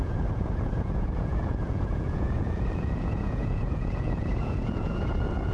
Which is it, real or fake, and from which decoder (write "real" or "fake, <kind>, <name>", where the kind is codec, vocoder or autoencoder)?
fake, vocoder, Vocos